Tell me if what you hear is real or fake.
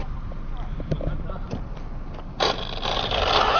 real